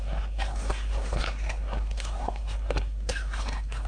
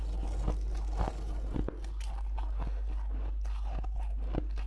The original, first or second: second